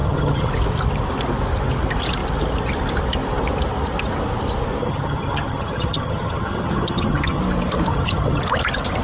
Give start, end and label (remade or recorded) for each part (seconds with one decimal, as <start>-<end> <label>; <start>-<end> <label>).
0.0-0.5 remade; 0.5-4.8 recorded; 4.8-7.4 remade; 7.4-7.9 recorded; 7.9-8.4 remade; 8.4-9.0 recorded